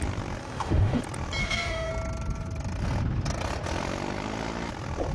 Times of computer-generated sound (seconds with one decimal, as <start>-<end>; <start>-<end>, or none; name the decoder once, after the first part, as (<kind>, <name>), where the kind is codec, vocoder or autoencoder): 0.4-1.0 (autoencoder, DAC-VAE); 1.4-1.9